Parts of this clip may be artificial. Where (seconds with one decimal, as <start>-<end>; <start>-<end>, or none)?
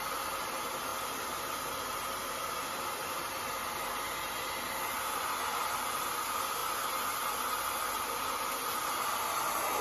none